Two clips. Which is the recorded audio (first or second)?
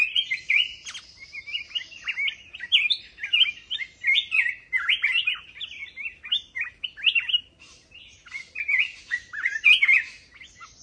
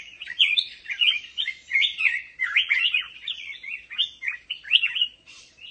first